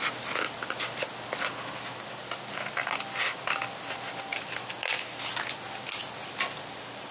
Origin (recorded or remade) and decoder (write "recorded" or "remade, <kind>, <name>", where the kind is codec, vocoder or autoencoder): recorded